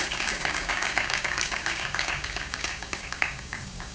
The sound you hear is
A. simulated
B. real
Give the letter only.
A